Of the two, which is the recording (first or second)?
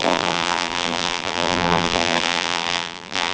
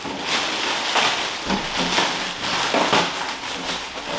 second